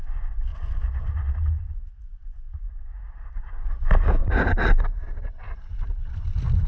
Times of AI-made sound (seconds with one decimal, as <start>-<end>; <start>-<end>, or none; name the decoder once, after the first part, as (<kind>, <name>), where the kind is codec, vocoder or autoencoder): 4.2-5.3 (vocoder, BigVGAN v2)